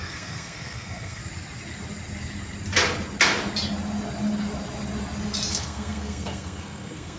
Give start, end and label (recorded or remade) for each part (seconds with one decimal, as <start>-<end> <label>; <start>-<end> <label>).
0.0-1.2 remade; 1.2-5.5 recorded; 5.5-7.2 remade